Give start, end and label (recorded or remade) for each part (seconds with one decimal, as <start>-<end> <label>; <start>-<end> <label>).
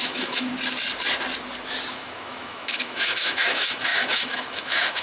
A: 0.0-0.5 remade; 0.5-1.9 recorded; 1.9-5.0 remade